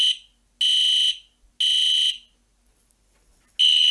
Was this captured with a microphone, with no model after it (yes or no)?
yes